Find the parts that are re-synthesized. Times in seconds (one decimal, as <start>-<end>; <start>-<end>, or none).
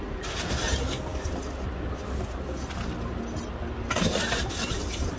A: none